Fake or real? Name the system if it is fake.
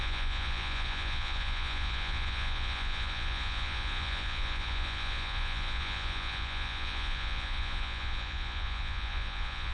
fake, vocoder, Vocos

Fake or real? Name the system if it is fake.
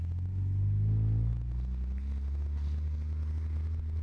real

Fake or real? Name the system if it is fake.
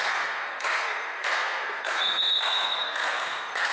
fake, codec, SNAC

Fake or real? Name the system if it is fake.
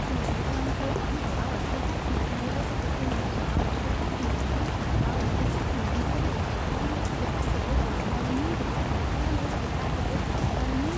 real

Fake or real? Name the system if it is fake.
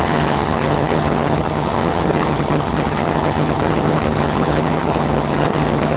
fake, vocoder, HiFi-GAN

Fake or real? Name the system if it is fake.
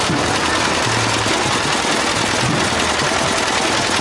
real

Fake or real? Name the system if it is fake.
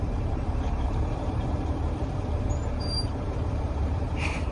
fake, vocoder, BigVGAN v2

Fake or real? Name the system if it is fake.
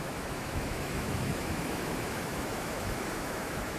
fake, autoencoder, DAC-VAE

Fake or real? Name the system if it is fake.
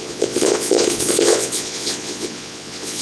fake, vocoder, Vocos